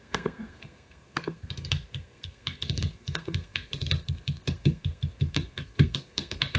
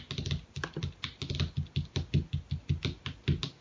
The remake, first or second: first